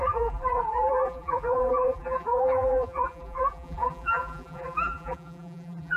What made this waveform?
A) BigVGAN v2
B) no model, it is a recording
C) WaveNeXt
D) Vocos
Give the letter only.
A